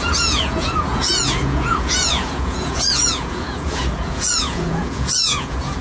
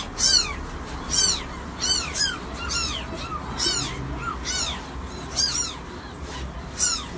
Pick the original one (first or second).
second